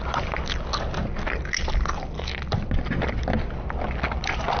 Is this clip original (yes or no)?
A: yes